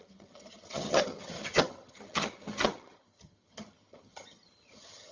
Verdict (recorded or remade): remade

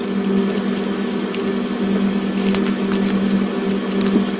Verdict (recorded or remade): recorded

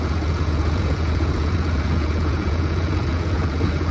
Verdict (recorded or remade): remade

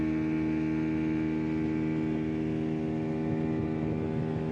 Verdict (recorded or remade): recorded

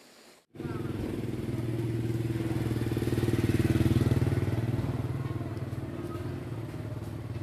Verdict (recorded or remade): recorded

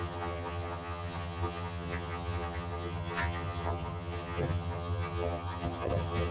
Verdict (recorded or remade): remade